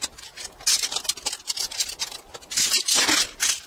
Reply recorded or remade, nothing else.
recorded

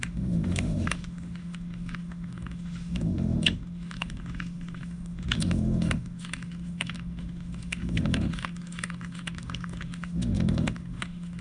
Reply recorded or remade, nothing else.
remade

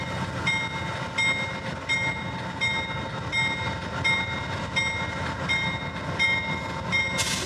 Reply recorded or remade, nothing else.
recorded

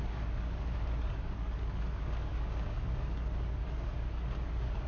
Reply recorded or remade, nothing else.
remade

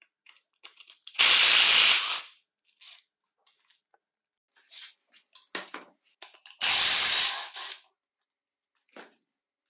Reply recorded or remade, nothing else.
recorded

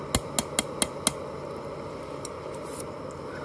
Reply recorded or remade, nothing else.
recorded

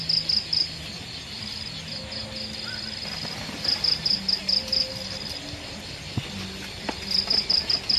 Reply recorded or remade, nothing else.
recorded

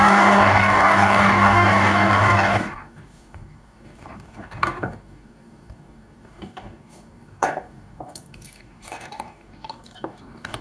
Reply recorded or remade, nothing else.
remade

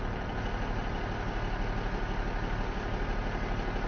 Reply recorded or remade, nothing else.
recorded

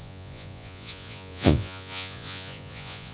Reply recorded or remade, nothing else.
remade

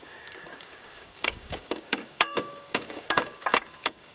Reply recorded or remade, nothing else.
remade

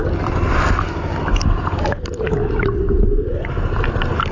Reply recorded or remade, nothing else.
recorded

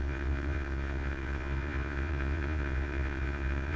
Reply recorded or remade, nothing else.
remade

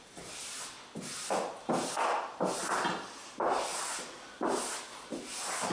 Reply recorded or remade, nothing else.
recorded